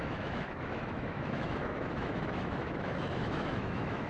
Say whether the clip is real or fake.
fake